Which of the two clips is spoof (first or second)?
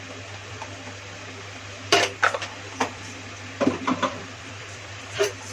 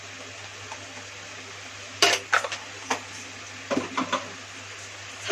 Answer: first